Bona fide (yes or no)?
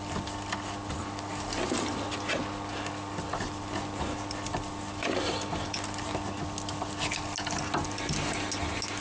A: yes